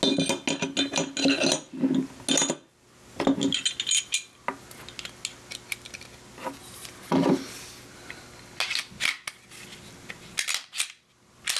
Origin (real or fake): real